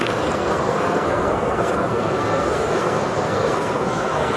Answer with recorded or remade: remade